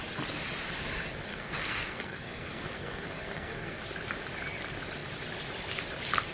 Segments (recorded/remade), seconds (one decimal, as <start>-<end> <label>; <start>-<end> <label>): 0.0-1.3 recorded; 1.3-3.8 remade; 3.8-6.3 recorded